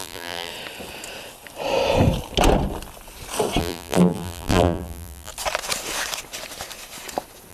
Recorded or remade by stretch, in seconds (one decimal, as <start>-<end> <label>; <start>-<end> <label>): 0.0-0.5 remade; 0.5-3.6 recorded; 3.6-5.3 remade; 5.3-7.5 recorded